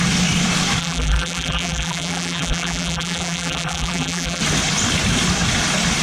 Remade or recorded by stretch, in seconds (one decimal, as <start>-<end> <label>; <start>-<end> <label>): 0.0-0.8 recorded; 0.8-4.4 remade; 4.4-6.0 recorded